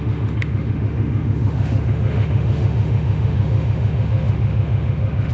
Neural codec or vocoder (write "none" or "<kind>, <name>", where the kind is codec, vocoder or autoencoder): autoencoder, DAC-VAE